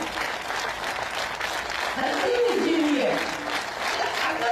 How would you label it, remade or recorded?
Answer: recorded